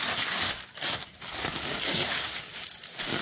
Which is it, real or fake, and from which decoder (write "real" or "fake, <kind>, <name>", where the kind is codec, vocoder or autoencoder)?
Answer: real